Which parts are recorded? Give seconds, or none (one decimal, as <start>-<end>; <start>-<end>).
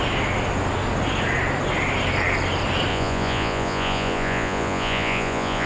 0.0-2.9